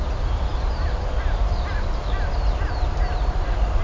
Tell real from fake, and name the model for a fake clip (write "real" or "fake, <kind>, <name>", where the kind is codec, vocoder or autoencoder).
real